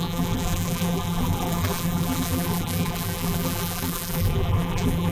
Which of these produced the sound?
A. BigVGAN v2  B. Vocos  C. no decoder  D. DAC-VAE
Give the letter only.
A